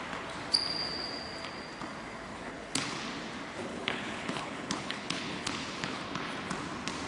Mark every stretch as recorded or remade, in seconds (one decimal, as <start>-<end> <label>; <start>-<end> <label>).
0.0-2.3 recorded; 2.3-3.0 remade; 3.0-3.7 recorded; 3.7-6.0 remade; 6.0-7.1 recorded